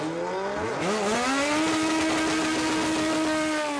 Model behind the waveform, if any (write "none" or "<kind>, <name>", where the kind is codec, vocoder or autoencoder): none